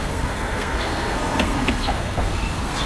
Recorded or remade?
remade